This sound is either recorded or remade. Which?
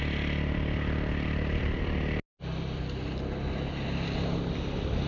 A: recorded